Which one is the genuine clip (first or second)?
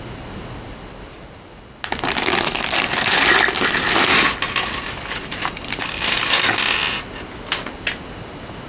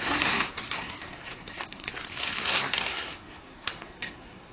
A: first